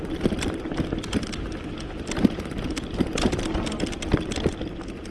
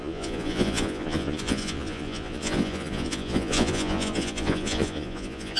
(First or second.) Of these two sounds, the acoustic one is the first